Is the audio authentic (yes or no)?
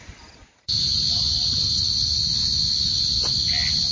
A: yes